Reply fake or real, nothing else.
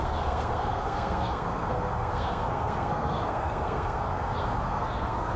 fake